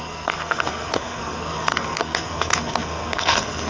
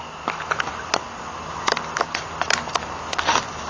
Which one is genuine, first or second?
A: second